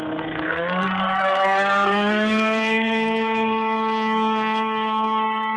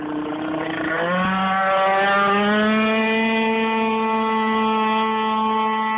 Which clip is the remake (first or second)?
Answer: first